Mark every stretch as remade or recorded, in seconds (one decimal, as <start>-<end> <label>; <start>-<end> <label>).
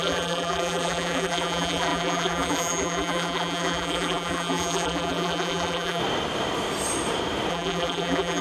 0.0-6.0 remade; 6.0-7.5 recorded; 7.5-8.4 remade